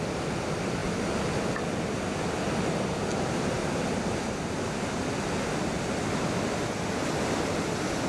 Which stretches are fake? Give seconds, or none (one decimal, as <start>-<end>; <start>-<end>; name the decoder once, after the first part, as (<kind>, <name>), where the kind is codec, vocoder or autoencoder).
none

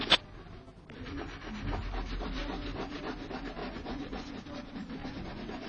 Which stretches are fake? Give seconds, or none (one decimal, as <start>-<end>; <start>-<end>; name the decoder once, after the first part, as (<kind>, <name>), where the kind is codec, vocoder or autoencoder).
3.6-4.3 (vocoder, Vocos); 5.0-5.7

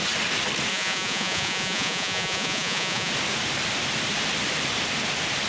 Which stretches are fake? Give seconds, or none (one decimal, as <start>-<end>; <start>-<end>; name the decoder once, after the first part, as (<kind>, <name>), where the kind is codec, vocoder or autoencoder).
0.7-3.1 (vocoder, Vocos)